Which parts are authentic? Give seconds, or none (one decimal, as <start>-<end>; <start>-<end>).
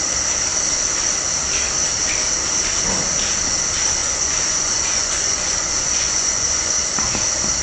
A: 0.0-4.0; 6.7-7.6